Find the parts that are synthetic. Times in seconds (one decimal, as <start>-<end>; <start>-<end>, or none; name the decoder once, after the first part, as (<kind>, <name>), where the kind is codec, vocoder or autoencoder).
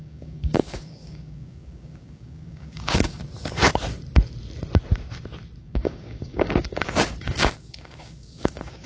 0.0-3.2 (codec, DAC); 5.6-8.9